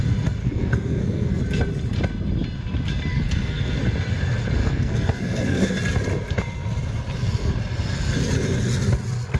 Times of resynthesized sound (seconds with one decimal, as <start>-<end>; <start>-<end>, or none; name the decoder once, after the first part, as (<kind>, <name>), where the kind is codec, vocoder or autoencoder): 0.4-1.4 (codec, SNAC); 3.1-3.8; 4.6-5.7